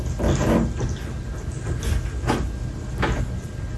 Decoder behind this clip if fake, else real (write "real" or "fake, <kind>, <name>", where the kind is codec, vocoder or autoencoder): real